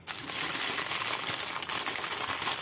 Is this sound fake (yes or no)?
no